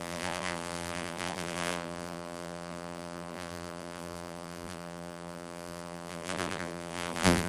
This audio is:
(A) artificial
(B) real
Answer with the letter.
A